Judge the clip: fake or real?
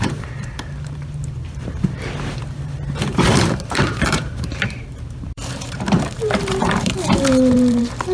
fake